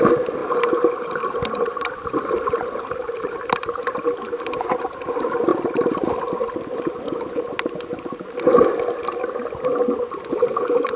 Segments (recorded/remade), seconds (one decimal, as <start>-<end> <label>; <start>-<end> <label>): 0.0-0.4 recorded; 0.4-3.4 remade; 3.4-5.5 recorded; 5.5-6.1 remade; 6.1-11.0 recorded